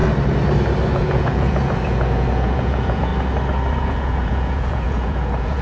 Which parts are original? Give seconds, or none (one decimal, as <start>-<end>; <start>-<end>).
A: 0.0-0.9; 3.1-3.7